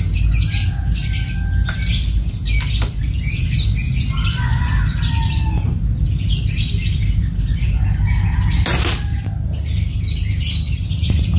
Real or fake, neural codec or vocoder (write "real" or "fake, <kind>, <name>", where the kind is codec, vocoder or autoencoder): real